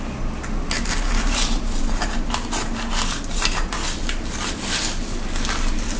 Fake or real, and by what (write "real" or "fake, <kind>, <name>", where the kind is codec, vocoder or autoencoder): real